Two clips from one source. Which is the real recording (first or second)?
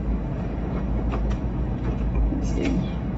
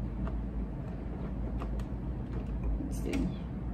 second